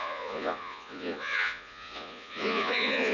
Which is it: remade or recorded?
remade